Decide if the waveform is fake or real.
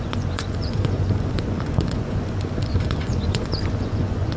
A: fake